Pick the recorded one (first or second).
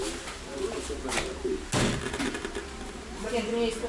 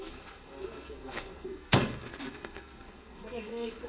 first